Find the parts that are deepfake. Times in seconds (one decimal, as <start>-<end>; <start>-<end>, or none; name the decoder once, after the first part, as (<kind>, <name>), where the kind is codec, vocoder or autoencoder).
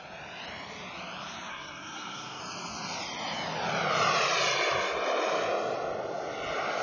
1.5-2.4 (codec, SNAC)